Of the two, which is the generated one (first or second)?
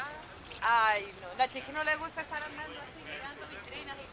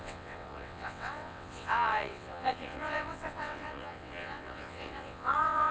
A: second